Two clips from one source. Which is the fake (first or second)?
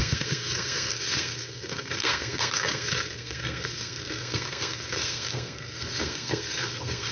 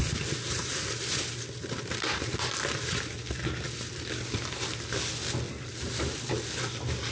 first